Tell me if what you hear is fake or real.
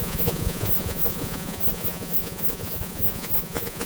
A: fake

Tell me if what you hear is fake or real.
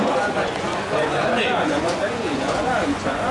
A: fake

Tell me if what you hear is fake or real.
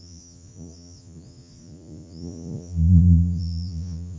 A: fake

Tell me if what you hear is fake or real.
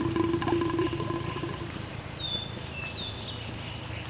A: real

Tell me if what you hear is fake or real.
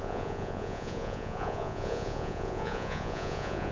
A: fake